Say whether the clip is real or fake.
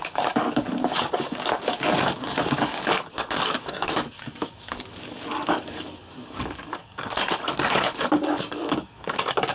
fake